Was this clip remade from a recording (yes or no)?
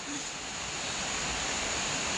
no